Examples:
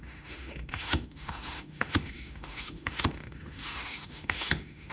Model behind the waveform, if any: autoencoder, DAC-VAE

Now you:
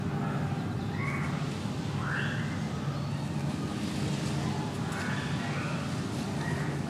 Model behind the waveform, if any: none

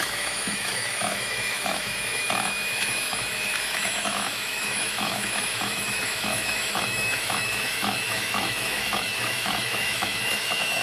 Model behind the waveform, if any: autoencoder, DAC-VAE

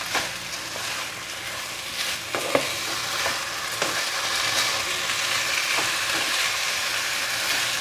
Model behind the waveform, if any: none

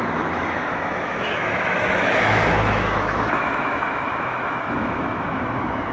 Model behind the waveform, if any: autoencoder, DAC-VAE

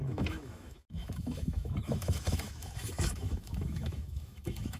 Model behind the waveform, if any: autoencoder, DAC-VAE